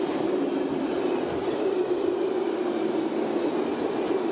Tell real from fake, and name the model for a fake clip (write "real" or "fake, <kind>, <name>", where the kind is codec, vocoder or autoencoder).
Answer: real